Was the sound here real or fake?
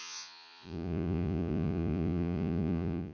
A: fake